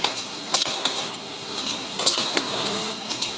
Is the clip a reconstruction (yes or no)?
yes